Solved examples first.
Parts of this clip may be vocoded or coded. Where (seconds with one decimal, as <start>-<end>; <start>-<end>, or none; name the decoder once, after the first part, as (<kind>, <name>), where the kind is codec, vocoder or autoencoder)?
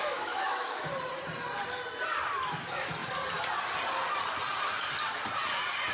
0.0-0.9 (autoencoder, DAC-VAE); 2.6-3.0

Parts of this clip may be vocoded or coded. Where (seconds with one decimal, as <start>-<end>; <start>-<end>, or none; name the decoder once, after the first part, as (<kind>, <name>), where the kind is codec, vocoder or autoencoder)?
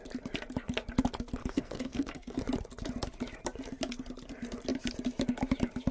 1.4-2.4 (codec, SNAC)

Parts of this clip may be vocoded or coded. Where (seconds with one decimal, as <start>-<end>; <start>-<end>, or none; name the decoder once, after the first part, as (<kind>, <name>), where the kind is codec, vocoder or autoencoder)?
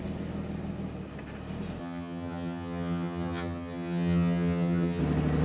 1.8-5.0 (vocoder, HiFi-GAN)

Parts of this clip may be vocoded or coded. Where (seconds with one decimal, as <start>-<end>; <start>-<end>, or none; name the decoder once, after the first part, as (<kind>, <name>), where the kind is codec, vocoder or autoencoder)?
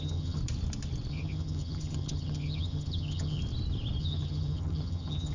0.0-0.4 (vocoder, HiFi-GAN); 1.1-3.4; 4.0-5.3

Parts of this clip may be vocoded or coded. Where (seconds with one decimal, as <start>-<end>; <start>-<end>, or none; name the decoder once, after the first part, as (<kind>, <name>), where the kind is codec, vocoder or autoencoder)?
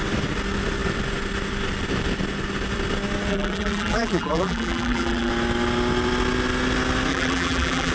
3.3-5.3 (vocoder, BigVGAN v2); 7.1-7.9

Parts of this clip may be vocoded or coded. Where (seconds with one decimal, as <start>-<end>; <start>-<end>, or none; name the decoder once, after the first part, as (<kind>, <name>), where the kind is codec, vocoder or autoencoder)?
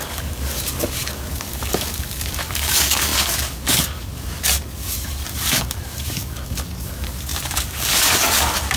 0.0-8.8 (codec, DAC)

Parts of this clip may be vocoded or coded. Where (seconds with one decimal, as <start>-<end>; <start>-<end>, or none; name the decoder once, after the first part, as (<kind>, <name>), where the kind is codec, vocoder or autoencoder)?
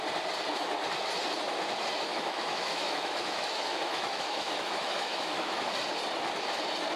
2.1-5.7 (autoencoder, DAC-VAE)